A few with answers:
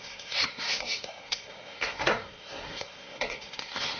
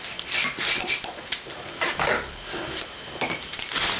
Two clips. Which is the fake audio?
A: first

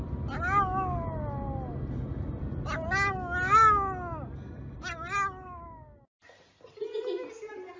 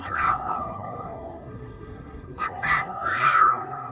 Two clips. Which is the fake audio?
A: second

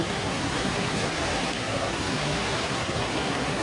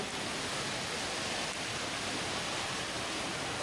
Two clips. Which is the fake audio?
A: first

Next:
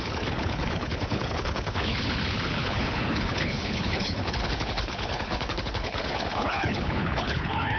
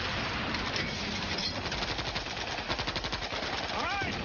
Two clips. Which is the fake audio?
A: first